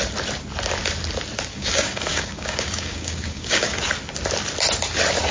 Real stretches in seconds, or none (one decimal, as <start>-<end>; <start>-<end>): 0.0-1.5; 3.8-5.3